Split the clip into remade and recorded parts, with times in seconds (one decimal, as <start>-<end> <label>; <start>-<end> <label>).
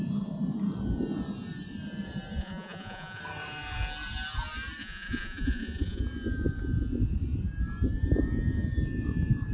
0.0-2.4 recorded; 2.4-3.2 remade; 3.2-4.8 recorded; 4.8-6.0 remade; 6.0-9.5 recorded